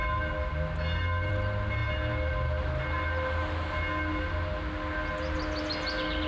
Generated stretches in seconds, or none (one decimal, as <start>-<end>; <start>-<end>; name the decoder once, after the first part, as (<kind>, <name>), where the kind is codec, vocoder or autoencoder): none